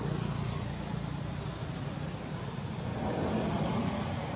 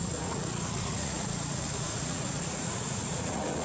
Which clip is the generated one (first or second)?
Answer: second